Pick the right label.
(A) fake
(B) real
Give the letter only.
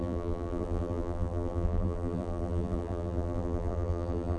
A